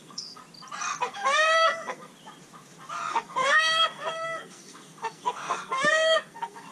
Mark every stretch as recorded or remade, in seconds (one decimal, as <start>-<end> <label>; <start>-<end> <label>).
0.0-0.4 remade; 0.4-1.0 recorded; 1.0-2.1 remade; 2.1-3.1 recorded; 3.1-6.7 remade